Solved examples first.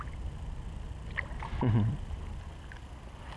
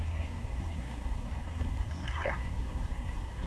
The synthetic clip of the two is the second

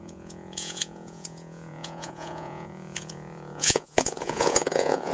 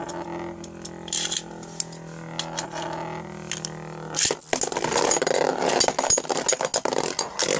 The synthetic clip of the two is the first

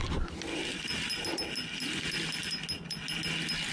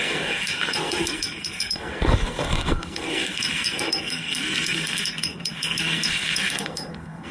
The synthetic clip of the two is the second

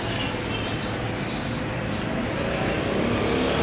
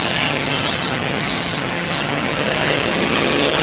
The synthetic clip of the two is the second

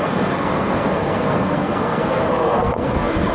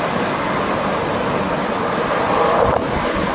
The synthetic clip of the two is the first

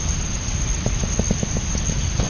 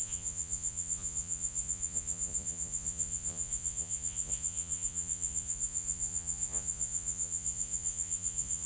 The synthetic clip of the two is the second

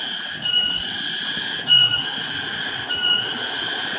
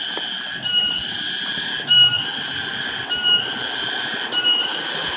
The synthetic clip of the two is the first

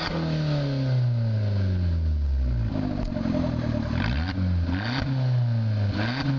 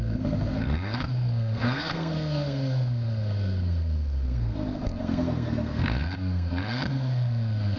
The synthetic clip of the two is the second